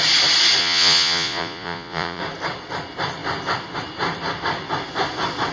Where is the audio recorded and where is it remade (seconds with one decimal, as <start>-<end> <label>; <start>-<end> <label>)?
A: 0.0-0.6 recorded; 0.6-2.2 remade; 2.2-5.5 recorded